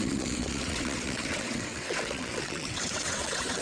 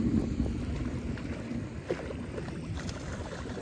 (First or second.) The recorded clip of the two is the second